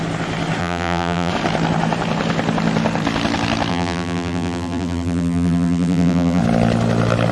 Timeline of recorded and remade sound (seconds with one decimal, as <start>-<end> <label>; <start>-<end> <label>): 0.0-0.6 recorded; 0.6-1.3 remade; 1.3-3.7 recorded; 3.7-6.4 remade; 6.4-7.3 recorded